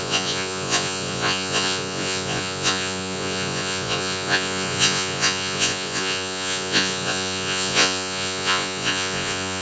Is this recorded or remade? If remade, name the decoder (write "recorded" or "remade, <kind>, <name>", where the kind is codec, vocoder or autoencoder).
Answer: remade, vocoder, Vocos